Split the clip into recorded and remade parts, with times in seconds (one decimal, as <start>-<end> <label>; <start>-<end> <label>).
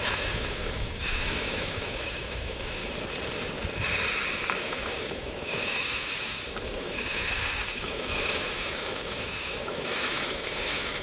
0.0-2.8 remade; 2.8-4.6 recorded; 4.6-11.0 remade